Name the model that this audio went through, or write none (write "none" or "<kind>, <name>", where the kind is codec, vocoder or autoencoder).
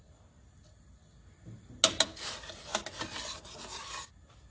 none